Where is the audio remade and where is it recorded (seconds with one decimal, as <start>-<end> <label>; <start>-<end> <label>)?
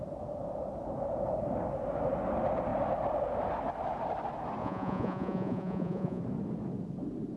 0.0-4.6 recorded; 4.6-6.2 remade; 6.2-7.4 recorded